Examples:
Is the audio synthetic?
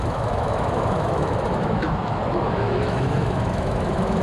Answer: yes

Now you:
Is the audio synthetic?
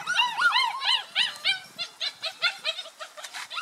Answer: no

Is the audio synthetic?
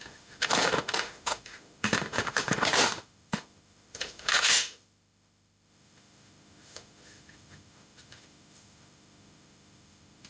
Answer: yes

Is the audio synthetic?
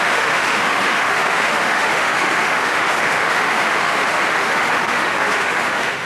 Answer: yes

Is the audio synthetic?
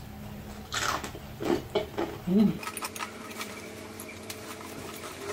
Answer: no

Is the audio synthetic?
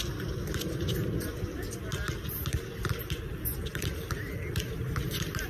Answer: no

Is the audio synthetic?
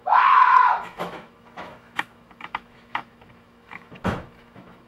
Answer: yes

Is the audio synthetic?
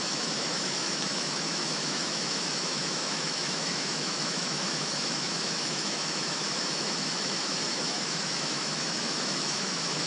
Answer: yes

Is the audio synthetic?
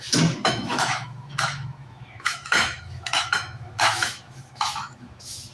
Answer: yes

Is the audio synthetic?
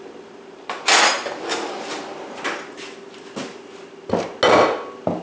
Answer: no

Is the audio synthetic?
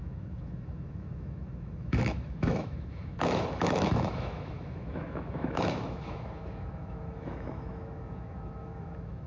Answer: yes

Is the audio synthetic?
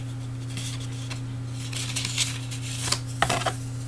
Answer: no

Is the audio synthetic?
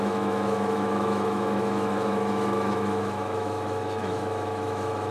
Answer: yes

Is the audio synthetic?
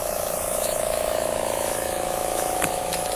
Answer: yes